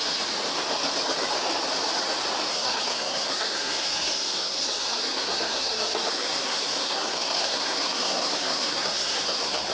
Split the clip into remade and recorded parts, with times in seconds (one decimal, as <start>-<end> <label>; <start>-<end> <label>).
0.0-2.5 recorded; 2.5-9.7 remade

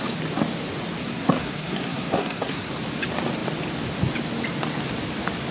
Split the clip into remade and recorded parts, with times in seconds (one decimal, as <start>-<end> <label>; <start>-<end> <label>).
0.0-1.0 recorded; 1.0-2.7 remade; 2.7-5.5 recorded

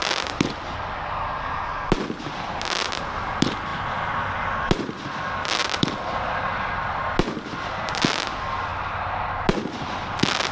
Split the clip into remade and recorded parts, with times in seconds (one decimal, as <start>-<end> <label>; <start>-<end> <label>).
0.0-10.5 recorded